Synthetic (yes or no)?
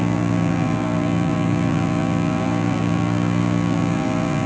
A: yes